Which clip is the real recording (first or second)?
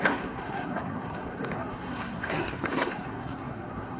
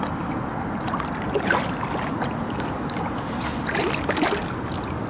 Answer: second